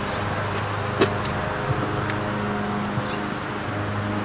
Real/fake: real